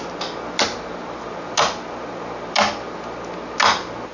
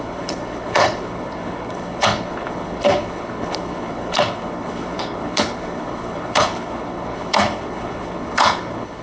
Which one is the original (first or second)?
first